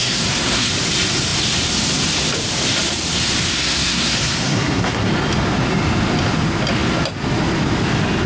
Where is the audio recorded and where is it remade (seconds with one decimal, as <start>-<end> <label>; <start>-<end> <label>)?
0.0-0.7 remade; 0.7-3.5 recorded; 3.5-5.1 remade; 5.1-8.3 recorded